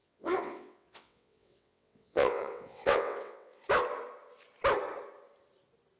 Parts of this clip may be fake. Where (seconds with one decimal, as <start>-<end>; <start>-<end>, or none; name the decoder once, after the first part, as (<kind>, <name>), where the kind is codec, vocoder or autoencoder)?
0.0-3.6 (vocoder, WaveNeXt)